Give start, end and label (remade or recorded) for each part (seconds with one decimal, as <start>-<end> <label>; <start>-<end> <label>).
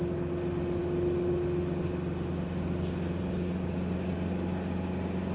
0.0-5.3 recorded